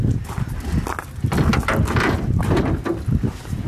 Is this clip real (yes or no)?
yes